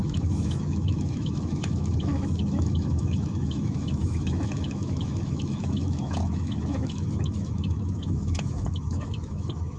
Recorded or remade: remade